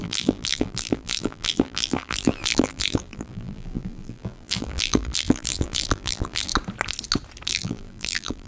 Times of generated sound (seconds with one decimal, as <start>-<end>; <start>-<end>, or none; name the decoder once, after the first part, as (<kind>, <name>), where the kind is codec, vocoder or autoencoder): 0.0-6.5 (vocoder, BigVGAN v2); 7.5-8.5